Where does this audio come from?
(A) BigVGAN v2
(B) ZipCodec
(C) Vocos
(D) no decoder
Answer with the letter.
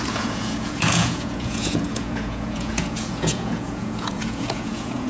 C